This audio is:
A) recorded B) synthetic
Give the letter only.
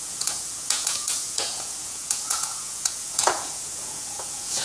B